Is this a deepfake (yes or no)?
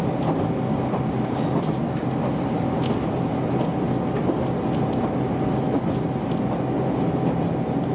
no